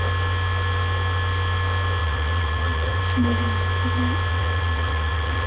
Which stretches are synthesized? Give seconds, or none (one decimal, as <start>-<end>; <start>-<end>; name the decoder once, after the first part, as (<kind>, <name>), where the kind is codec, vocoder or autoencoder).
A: 2.0-3.0 (vocoder, WaveNeXt); 4.3-5.5